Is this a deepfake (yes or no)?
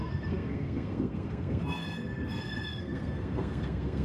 yes